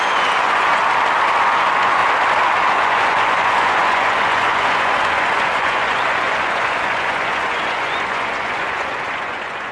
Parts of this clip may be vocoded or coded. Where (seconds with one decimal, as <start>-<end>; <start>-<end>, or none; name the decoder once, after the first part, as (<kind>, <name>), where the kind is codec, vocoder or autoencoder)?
0.0-0.8 (vocoder, Vocos); 1.4-2.0; 2.7-9.7